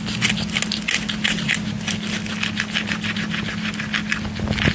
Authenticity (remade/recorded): recorded